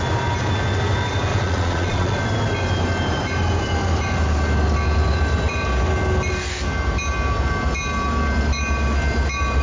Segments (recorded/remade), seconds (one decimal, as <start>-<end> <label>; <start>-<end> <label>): 0.0-1.3 recorded; 1.3-2.2 remade; 2.2-9.6 recorded